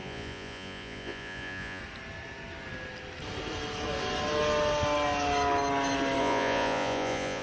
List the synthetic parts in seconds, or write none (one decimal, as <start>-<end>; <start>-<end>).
0.0-1.8; 6.2-7.4